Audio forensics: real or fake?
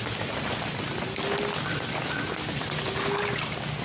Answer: fake